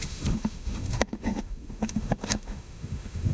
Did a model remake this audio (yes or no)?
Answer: yes